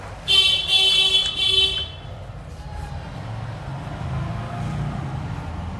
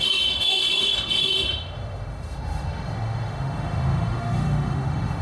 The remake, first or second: second